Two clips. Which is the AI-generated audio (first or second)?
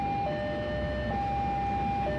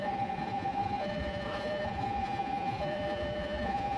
second